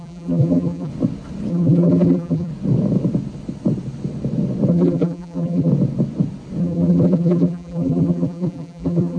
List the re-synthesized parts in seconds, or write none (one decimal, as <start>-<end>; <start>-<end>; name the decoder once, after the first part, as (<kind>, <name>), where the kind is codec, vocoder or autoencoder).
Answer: 0.0-0.9 (vocoder, BigVGAN v2); 1.5-2.5; 4.7-5.7; 6.6-9.2